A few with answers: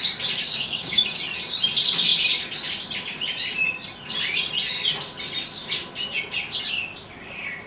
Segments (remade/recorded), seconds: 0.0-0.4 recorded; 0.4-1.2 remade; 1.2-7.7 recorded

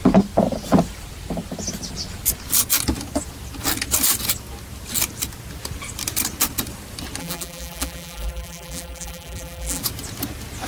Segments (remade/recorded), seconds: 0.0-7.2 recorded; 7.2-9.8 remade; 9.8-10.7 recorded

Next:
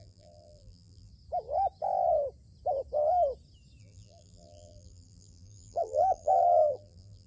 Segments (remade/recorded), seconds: 0.0-1.1 remade; 1.1-3.8 recorded; 3.8-7.3 remade

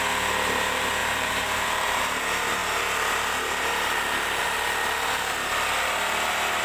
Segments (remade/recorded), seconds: 0.0-1.0 recorded; 1.0-2.0 remade; 2.0-6.6 recorded

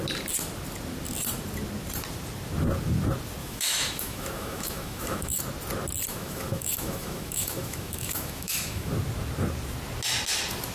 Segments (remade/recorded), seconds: 0.0-3.4 recorded; 3.4-5.4 remade; 5.4-6.1 recorded; 6.1-8.9 remade; 8.9-10.7 recorded